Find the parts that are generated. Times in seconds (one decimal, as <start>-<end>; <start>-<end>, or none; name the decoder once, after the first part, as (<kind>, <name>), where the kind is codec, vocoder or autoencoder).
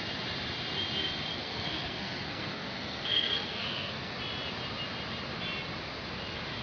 1.3-4.1 (codec, SNAC)